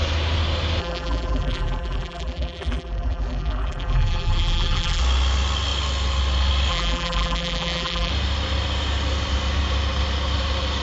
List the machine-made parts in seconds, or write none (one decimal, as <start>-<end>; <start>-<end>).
0.8-5.0; 6.7-8.1